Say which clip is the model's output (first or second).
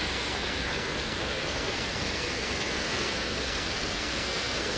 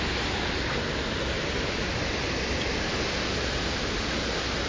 first